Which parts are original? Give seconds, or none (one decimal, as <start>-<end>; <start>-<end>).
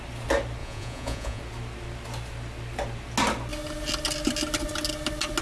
0.0-0.6; 1.4-5.4